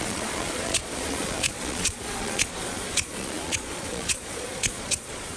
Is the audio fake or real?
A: fake